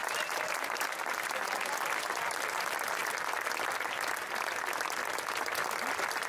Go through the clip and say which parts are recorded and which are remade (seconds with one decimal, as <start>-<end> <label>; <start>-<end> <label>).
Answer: 0.0-1.3 remade; 1.3-6.3 recorded